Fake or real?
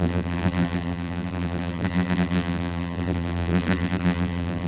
fake